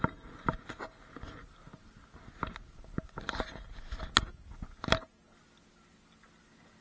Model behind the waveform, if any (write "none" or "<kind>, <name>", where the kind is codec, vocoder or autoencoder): none